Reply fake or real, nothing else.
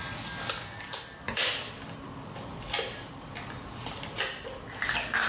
real